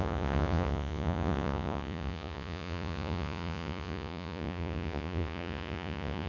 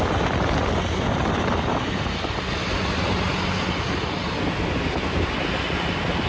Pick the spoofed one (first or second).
first